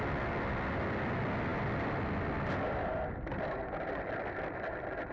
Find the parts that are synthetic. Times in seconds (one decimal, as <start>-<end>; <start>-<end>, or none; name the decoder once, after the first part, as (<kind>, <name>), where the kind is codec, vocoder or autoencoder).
none